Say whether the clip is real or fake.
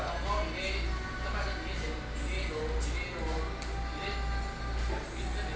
real